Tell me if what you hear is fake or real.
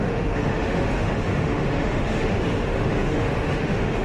fake